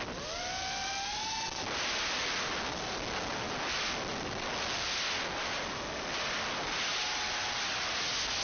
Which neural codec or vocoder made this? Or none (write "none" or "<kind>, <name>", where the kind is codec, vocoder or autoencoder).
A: none